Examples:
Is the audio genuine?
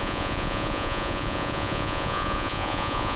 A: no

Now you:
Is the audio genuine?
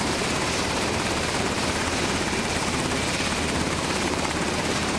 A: no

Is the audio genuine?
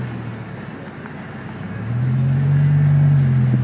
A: yes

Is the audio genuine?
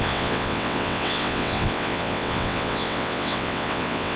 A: no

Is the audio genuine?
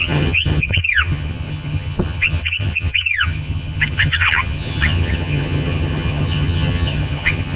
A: no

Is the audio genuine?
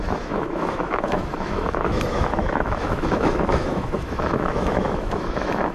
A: no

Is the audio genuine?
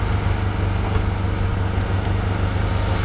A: yes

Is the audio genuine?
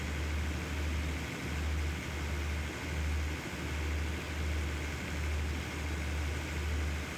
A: yes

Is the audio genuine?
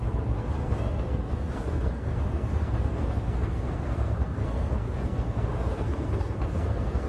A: no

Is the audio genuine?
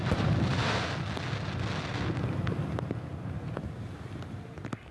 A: yes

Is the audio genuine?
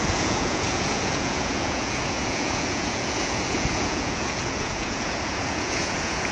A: no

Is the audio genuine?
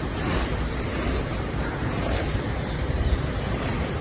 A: no